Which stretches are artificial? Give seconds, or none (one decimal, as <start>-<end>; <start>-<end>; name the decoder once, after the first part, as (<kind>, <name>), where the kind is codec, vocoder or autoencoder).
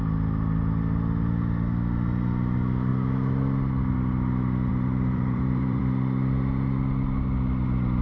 4.7-5.8 (vocoder, BigVGAN v2)